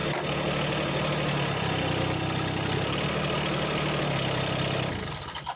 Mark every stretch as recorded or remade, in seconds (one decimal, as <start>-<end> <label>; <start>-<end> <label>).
0.0-5.6 recorded